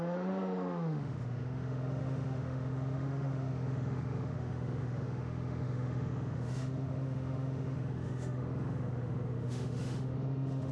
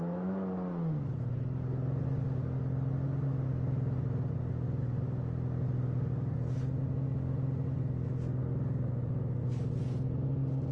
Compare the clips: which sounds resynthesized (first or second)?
first